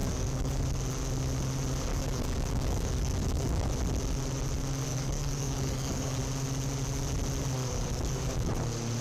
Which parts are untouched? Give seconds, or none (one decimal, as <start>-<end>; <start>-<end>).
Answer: 0.6-1.9; 3.7-4.9; 6.2-7.6; 8.5-9.0